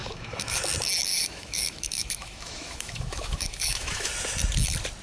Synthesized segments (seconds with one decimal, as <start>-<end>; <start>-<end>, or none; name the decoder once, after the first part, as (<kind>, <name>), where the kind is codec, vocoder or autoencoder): 0.0-0.6 (autoencoder, DAC-VAE); 1.1-4.1